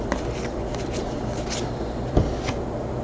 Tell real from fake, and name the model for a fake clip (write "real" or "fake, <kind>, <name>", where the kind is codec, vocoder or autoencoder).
fake, vocoder, BigVGAN v2